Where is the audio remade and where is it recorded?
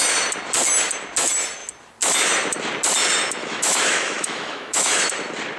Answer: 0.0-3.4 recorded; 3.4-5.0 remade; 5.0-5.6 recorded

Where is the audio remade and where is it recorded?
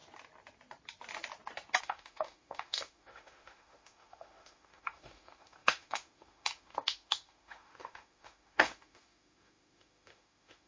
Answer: 0.0-1.8 recorded; 1.8-10.7 remade